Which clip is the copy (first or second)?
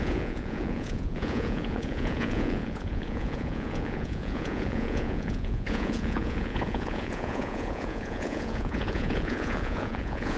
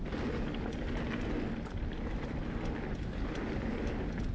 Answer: first